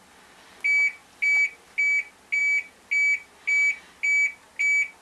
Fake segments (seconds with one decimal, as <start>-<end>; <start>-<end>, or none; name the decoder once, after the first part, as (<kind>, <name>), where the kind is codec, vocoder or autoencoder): none